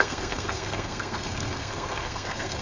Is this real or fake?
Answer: fake